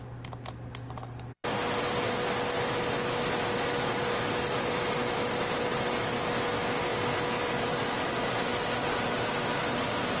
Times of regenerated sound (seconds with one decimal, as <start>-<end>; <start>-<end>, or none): none